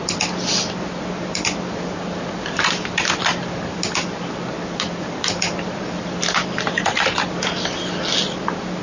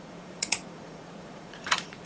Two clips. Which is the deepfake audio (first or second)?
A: second